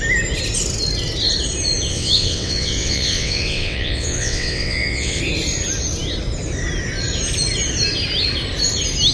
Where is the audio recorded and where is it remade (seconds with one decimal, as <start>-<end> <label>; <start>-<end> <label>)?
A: 0.0-1.9 recorded; 1.9-5.2 remade; 5.2-9.1 recorded